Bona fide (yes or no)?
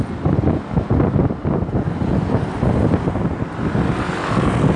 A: yes